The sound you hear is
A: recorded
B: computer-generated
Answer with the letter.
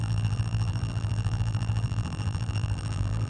B